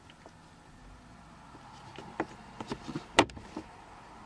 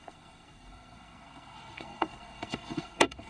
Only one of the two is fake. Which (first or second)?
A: second